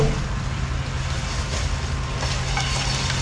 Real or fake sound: real